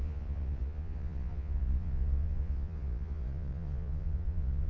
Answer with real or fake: fake